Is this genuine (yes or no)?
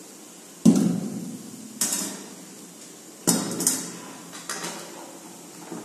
yes